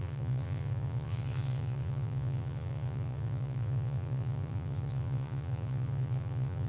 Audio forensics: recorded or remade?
remade